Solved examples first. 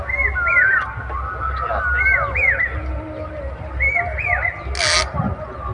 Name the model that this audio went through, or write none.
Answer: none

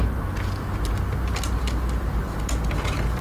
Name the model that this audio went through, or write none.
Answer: none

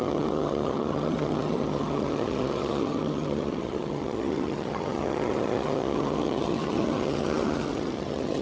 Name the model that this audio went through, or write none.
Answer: vocoder, HiFi-GAN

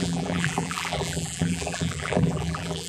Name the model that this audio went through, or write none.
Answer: vocoder, BigVGAN v2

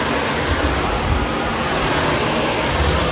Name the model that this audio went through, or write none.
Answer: none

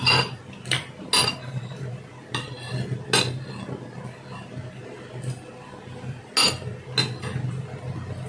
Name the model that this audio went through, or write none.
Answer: none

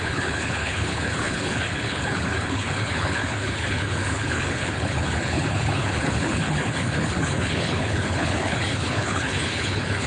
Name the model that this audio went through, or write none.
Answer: codec, HILCodec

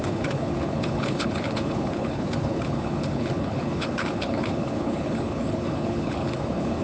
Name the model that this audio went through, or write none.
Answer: codec, HILCodec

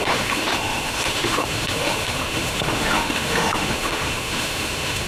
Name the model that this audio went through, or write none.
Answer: autoencoder, DAC-VAE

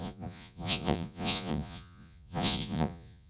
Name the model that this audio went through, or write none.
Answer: vocoder, Vocos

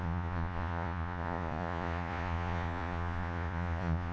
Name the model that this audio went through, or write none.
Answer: vocoder, Vocos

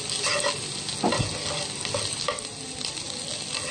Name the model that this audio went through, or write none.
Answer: none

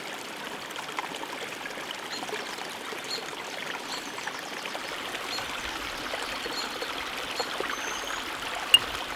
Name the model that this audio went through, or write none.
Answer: none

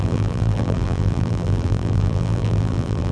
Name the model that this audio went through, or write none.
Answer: vocoder, BigVGAN v2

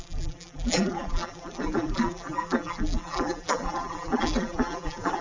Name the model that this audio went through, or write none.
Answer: vocoder, BigVGAN v2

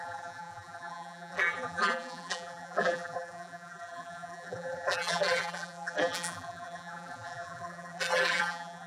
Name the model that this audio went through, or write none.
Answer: vocoder, BigVGAN v2